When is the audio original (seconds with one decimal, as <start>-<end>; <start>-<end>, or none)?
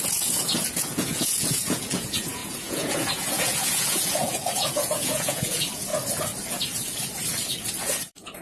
5.9-7.8